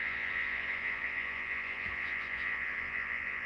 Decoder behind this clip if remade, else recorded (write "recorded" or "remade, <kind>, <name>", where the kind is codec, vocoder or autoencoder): remade, vocoder, Vocos